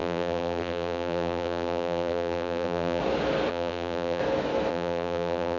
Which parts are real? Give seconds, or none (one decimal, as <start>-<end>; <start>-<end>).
3.0-3.5; 4.2-4.7